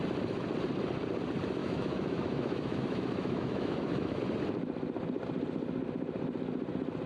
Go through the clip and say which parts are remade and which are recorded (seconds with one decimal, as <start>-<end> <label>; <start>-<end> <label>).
0.0-1.6 recorded; 1.6-4.2 remade; 4.2-7.1 recorded